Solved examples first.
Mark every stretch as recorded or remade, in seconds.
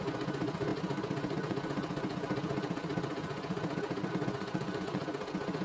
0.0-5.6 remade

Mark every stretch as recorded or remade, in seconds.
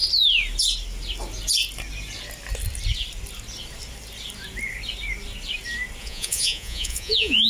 0.0-6.0 recorded; 6.0-7.5 remade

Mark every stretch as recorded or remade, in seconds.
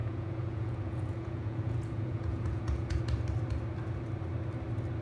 0.0-3.0 remade; 3.0-5.0 recorded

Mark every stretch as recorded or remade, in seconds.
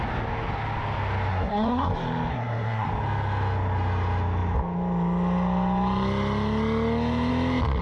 0.0-1.3 recorded; 1.3-1.9 remade; 1.9-2.3 recorded; 2.3-2.9 remade; 2.9-7.8 recorded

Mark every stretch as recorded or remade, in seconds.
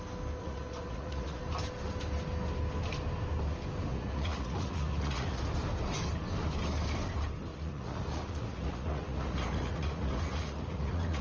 0.0-0.4 recorded; 0.4-1.4 remade; 1.4-3.9 recorded; 3.9-5.4 remade; 5.4-7.5 recorded; 7.5-11.2 remade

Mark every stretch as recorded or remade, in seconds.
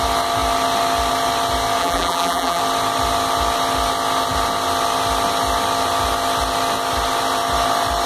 0.0-1.8 recorded; 1.8-2.6 remade; 2.6-8.1 recorded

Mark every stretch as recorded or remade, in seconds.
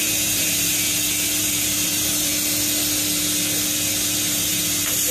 0.0-0.7 remade; 0.7-1.4 recorded; 1.4-2.3 remade; 2.3-4.3 recorded; 4.3-5.1 remade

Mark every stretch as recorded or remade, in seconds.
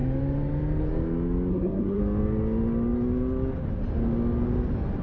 0.0-1.5 recorded; 1.5-2.0 remade; 2.0-5.0 recorded